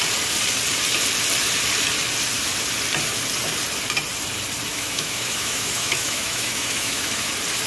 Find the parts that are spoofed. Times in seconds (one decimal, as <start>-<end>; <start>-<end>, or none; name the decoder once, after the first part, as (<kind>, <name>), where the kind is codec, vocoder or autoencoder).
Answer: 4.7-7.3 (autoencoder, DAC-VAE)